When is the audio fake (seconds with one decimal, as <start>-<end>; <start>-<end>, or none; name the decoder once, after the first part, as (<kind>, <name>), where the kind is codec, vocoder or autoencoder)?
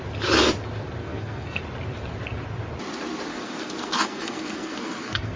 1.0-1.6 (codec, SNAC); 3.3-5.4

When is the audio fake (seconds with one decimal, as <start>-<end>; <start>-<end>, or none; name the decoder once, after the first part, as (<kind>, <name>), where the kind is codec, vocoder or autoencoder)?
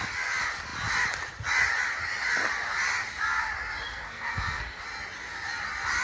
3.9-4.8 (codec, SNAC)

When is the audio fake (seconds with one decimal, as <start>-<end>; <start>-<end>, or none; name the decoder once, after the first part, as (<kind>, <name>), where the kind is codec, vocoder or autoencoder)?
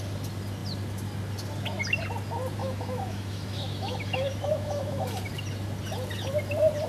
2.6-5.2 (autoencoder, DAC-VAE)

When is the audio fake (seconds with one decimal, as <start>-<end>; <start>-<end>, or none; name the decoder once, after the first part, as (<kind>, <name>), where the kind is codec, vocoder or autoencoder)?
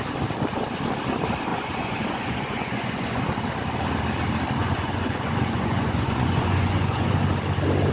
1.5-3.2 (vocoder, Vocos); 4.6-7.2